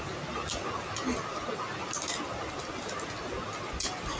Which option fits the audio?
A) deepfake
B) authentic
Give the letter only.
B